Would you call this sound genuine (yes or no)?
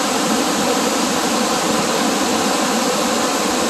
no